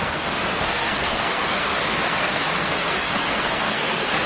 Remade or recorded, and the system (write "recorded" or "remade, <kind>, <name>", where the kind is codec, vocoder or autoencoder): remade, codec, SNAC